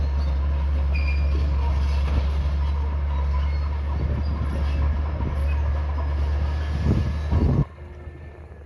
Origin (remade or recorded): recorded